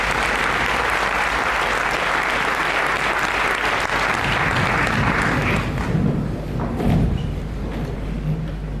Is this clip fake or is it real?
real